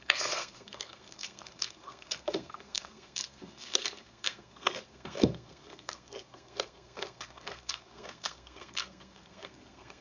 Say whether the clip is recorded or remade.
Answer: remade